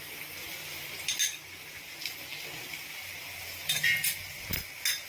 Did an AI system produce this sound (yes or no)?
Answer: no